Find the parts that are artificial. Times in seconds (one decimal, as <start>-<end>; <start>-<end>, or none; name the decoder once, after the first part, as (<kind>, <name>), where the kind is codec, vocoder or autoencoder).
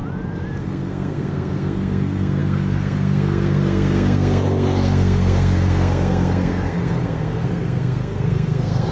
0.6-8.9 (codec, SNAC)